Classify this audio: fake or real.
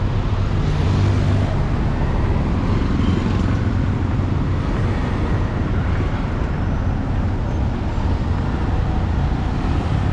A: real